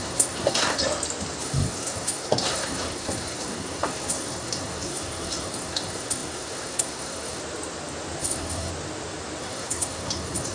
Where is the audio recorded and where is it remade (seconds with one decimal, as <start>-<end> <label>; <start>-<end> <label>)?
0.0-0.8 remade; 0.8-1.4 recorded; 1.4-7.4 remade; 7.4-8.2 recorded; 8.2-8.7 remade; 8.7-9.4 recorded; 9.4-10.5 remade